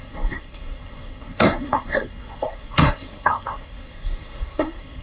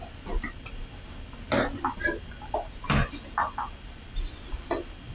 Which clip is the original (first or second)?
second